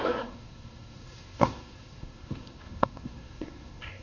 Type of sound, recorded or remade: remade